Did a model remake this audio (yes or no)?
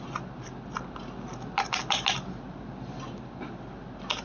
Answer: no